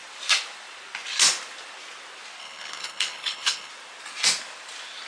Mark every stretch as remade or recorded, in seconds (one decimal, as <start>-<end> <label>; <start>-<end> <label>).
0.0-2.4 recorded; 2.4-3.7 remade; 3.7-5.1 recorded